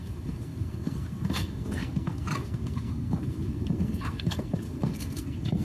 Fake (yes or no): yes